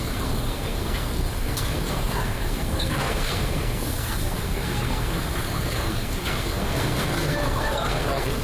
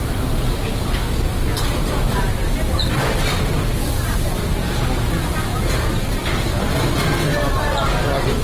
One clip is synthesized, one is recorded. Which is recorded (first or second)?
second